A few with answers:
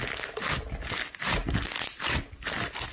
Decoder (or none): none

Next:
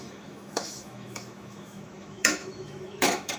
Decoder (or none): autoencoder, DAC-VAE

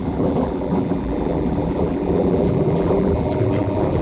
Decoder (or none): vocoder, BigVGAN v2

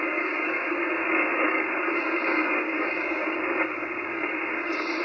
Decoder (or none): codec, DAC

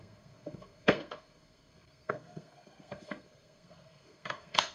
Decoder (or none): codec, SNAC